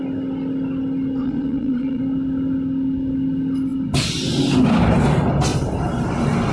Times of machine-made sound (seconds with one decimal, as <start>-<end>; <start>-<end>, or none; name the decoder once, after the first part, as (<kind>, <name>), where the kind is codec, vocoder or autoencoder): 1.2-2.0 (vocoder, Vocos)